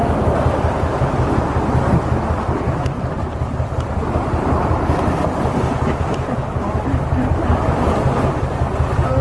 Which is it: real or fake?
real